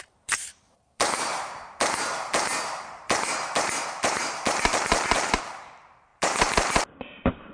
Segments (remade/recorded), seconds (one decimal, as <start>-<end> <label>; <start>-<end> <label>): 0.0-7.5 remade